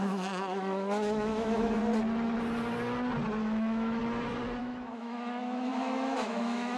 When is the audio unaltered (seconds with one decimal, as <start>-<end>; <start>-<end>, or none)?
1.8-3.4; 4.0-4.6